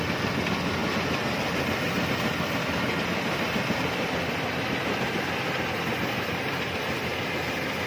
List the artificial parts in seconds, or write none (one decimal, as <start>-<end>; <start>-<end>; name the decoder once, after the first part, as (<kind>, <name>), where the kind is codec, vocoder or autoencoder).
none